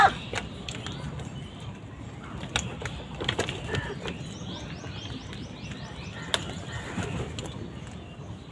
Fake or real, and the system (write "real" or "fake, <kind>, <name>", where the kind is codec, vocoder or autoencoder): real